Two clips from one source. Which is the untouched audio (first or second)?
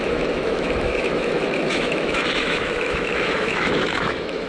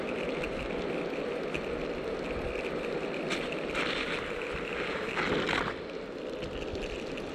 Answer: second